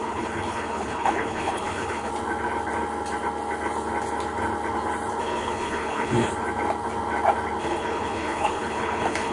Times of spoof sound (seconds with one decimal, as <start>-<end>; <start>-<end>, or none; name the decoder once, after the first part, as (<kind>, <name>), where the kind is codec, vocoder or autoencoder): 0.0-2.1 (codec, HILCodec); 5.2-6.3; 7.6-9.3